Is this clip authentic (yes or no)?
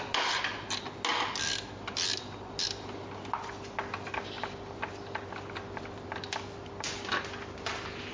yes